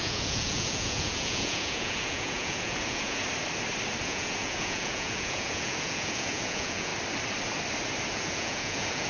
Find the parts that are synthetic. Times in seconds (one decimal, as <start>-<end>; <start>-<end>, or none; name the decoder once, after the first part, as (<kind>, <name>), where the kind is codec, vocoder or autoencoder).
0.0-3.2 (vocoder, Vocos); 4.0-6.9; 8.1-9.1